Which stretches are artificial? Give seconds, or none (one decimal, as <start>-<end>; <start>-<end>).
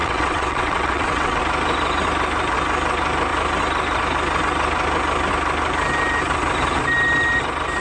0.0-1.4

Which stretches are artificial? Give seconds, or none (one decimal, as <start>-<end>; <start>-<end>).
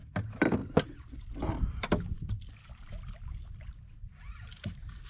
none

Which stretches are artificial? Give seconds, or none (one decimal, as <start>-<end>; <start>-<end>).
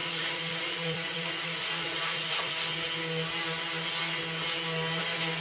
0.0-2.5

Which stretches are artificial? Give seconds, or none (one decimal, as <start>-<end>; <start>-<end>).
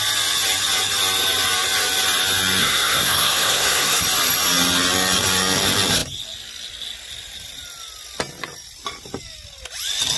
2.6-4.0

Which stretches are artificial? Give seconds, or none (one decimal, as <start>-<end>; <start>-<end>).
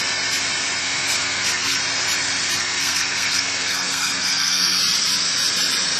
0.8-1.8; 2.6-4.8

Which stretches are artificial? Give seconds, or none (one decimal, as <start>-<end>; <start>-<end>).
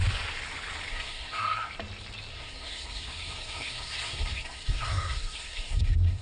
0.9-1.7; 2.3-6.2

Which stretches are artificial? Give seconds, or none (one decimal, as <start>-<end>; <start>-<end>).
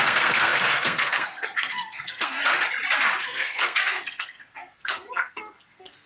0.0-2.4; 3.2-6.1